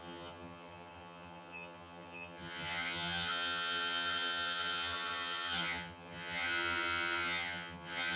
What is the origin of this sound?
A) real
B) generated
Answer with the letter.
B